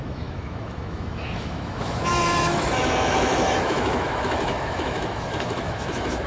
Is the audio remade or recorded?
remade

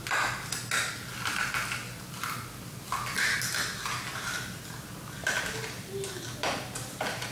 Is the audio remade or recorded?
recorded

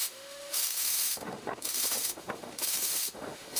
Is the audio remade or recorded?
remade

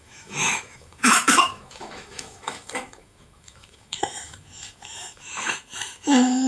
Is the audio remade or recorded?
remade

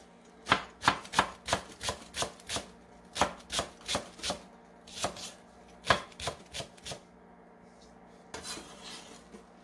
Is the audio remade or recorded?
recorded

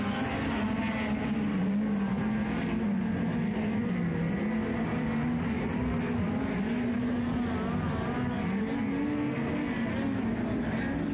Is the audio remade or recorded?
recorded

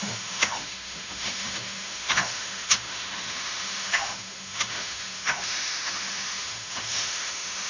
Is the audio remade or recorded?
remade